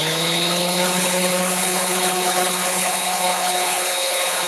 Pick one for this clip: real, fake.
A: fake